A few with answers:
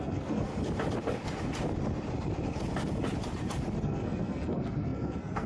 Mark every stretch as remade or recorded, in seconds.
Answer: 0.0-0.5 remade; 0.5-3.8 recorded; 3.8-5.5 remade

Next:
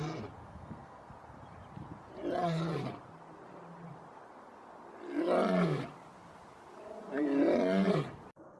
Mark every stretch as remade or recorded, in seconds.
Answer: 0.0-0.4 recorded; 0.4-1.1 remade; 1.1-8.6 recorded

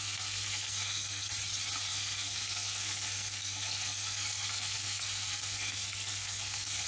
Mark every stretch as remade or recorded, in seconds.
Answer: 0.0-1.3 remade; 1.3-1.9 recorded; 1.9-6.9 remade